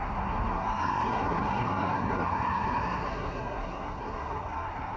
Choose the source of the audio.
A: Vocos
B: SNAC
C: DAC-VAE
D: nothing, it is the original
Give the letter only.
B